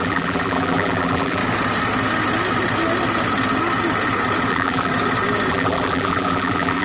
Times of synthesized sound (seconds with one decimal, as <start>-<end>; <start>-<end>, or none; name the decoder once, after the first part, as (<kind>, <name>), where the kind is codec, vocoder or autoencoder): 0.0-1.4 (vocoder, BigVGAN v2); 4.5-4.9; 5.5-6.8

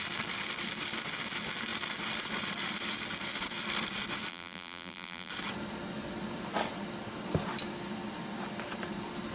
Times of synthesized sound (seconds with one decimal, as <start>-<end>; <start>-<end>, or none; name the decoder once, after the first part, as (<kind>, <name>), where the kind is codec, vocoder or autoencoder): 4.3-5.3 (vocoder, BigVGAN v2)

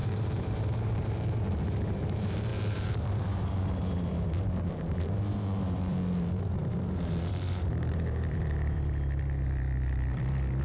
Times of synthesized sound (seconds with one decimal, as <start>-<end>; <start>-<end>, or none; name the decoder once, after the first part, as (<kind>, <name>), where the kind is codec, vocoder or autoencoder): 0.0-10.6 (vocoder, BigVGAN v2)